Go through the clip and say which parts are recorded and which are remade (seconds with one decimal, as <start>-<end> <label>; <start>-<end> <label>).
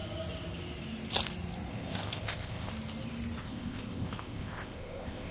0.0-1.7 recorded; 1.7-2.7 remade; 2.7-3.4 recorded; 3.4-5.3 remade